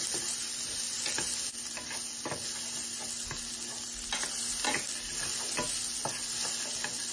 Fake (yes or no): no